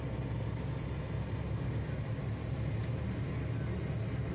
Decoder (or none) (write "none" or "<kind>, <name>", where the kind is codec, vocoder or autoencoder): none